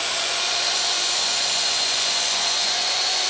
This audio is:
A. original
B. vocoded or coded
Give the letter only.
B